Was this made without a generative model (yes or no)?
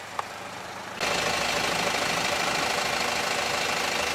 yes